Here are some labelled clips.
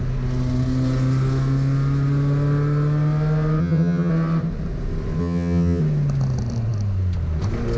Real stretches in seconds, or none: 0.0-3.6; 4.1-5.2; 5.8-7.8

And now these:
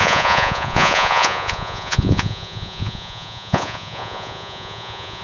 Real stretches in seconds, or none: none

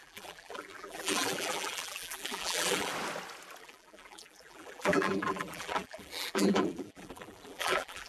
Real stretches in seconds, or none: 2.9-3.6